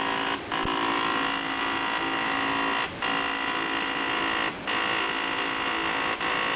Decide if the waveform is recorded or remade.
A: recorded